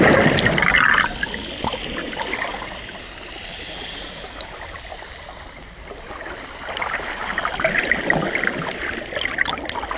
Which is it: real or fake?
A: real